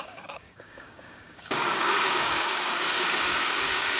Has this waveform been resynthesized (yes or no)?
yes